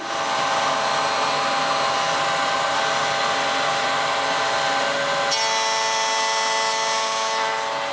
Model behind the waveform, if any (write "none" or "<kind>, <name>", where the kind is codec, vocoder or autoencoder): none